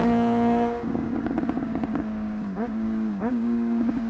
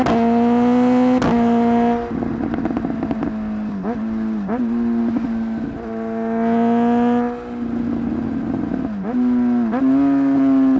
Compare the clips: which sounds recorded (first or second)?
second